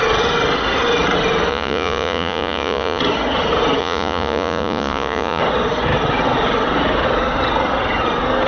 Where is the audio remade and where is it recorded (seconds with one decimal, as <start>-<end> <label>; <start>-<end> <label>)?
0.0-1.5 recorded; 1.5-3.0 remade; 3.0-3.8 recorded; 3.8-5.4 remade; 5.4-8.5 recorded